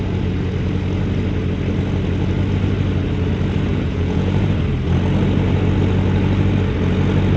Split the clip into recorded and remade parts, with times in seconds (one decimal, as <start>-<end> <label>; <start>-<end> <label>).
0.0-3.7 recorded; 3.7-4.4 remade; 4.4-7.4 recorded